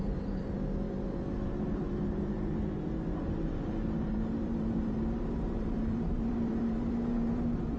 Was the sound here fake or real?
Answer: fake